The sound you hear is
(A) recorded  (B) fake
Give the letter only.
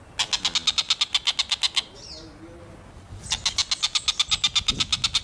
A